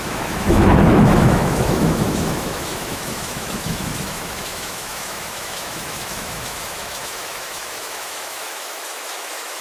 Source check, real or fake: fake